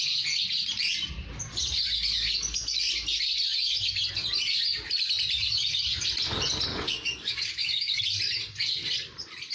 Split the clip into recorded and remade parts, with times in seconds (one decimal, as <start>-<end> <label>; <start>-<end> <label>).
0.0-6.7 recorded; 6.7-8.0 remade; 8.0-9.5 recorded